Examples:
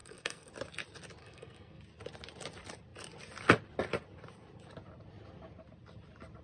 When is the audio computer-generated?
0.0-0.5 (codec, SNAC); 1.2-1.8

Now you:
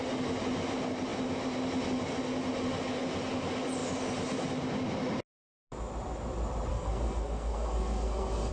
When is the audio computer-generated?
6.7-8.5 (codec, SNAC)

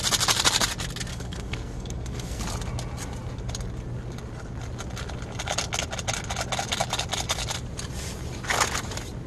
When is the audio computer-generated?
1.1-2.4 (codec, SNAC)